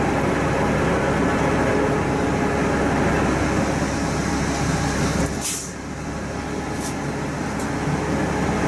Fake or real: real